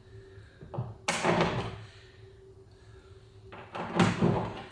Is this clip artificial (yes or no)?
no